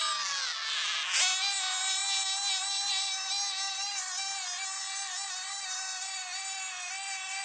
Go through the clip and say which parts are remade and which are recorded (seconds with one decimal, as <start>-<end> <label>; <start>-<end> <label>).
0.0-7.4 recorded